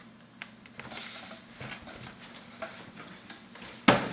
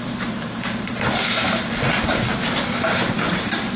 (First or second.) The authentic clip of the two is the first